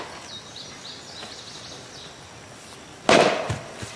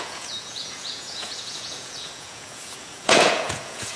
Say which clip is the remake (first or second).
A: second